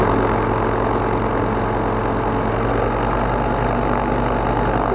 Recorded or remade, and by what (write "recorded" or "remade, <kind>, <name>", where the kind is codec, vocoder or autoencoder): recorded